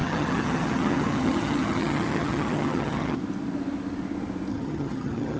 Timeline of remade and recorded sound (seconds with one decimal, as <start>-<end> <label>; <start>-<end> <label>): 0.0-3.2 remade; 3.2-4.5 recorded; 4.5-5.4 remade